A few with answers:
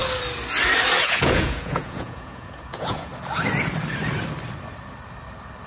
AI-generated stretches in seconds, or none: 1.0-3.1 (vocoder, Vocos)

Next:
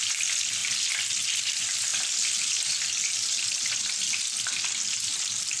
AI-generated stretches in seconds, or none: none

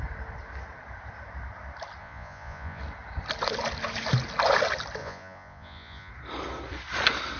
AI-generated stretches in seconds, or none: 2.0-2.8 (vocoder, Vocos); 5.0-6.1

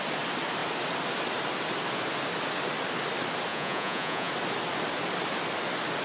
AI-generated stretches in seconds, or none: 3.5-4.3 (vocoder, Vocos)

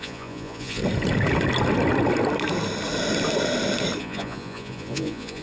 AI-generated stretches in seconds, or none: 0.0-0.8 (vocoder, Vocos); 4.0-5.4